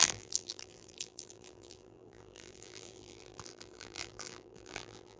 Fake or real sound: fake